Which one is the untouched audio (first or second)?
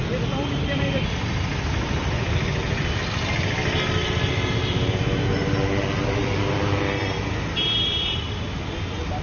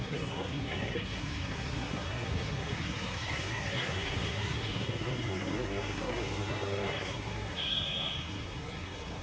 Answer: first